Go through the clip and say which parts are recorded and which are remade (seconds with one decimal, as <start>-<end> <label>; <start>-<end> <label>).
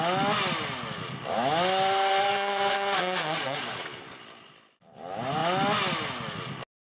0.0-2.2 recorded; 2.2-3.6 remade; 3.6-7.0 recorded